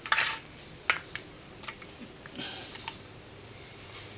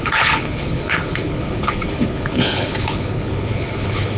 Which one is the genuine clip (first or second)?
first